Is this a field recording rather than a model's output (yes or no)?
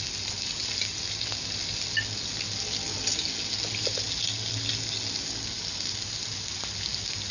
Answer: yes